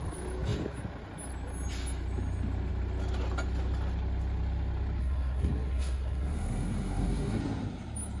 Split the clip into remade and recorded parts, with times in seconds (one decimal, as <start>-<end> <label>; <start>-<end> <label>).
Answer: 0.0-5.0 recorded; 5.0-7.4 remade; 7.4-8.2 recorded